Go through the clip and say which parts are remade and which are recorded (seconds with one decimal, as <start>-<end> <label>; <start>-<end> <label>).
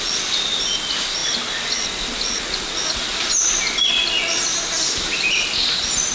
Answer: 0.0-6.1 recorded